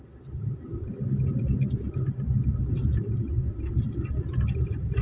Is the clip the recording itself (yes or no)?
yes